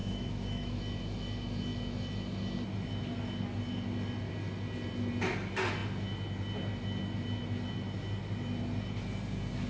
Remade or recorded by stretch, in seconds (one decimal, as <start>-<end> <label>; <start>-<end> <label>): 0.0-0.8 remade; 0.8-9.7 recorded